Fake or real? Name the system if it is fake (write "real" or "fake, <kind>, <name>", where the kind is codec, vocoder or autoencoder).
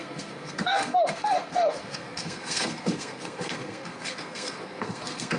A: fake, codec, SNAC